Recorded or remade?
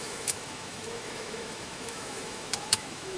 remade